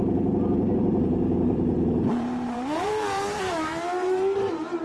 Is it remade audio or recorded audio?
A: remade